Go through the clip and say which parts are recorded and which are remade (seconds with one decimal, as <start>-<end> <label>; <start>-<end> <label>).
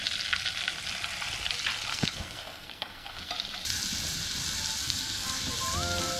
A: 0.0-1.9 recorded; 1.9-3.3 remade; 3.3-4.8 recorded; 4.8-5.4 remade; 5.4-6.2 recorded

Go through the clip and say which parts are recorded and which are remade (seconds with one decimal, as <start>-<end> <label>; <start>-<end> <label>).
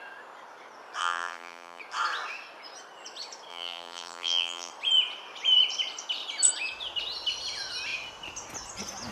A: 0.0-1.0 recorded; 1.0-1.8 remade; 1.8-3.5 recorded; 3.5-4.7 remade; 4.7-9.1 recorded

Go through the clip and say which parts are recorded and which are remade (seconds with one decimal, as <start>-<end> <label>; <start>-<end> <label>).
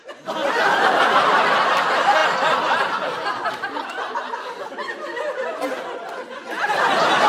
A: 0.0-0.4 recorded; 0.4-1.5 remade; 1.5-7.3 recorded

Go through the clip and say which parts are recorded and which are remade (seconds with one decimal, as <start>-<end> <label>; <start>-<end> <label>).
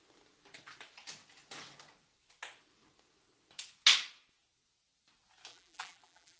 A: 0.0-5.5 recorded; 5.5-6.4 remade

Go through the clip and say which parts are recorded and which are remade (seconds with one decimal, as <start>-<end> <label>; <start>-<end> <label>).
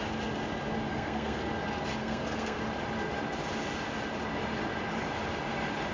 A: 0.0-0.9 recorded; 0.9-1.4 remade; 1.4-2.0 recorded; 2.0-2.6 remade; 2.6-5.9 recorded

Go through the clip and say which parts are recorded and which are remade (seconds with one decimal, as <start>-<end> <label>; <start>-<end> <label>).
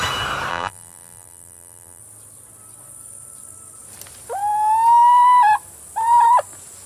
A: 0.0-0.5 recorded; 0.5-2.0 remade; 2.0-6.9 recorded